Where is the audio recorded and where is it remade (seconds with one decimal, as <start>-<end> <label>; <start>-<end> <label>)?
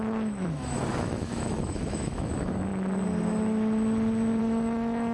0.0-2.7 remade; 2.7-4.4 recorded; 4.4-5.1 remade